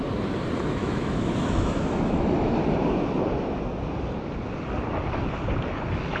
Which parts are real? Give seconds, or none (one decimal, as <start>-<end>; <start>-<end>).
0.0-0.8; 2.6-6.2